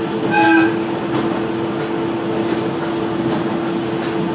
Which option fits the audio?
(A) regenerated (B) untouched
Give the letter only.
B